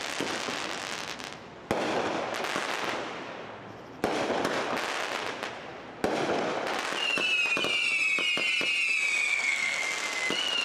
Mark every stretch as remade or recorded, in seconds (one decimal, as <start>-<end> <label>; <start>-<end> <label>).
0.0-9.3 recorded; 9.3-9.8 remade; 9.8-10.6 recorded